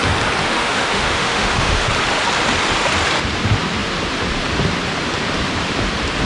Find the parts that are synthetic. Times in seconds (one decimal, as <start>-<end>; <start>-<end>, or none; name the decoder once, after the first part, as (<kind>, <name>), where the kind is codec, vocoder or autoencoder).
0.4-1.9 (autoencoder, DAC-VAE)